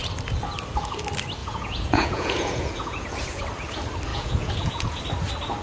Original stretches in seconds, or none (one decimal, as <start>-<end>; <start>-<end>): 0.0-1.4; 3.4-4.1; 5.0-5.6